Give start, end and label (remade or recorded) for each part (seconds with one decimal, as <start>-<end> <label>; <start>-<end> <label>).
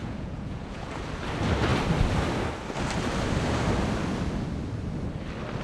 0.0-1.0 remade; 1.0-5.6 recorded